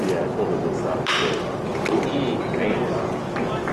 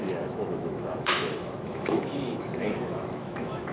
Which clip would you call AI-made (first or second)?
second